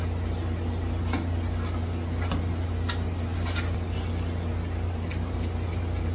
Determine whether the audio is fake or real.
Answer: real